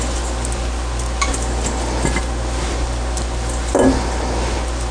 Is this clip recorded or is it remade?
recorded